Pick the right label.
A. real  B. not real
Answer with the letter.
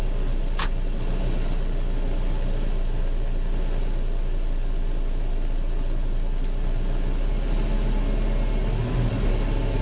A